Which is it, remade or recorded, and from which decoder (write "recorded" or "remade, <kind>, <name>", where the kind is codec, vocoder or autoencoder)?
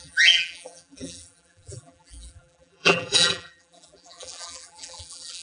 remade, vocoder, BigVGAN v2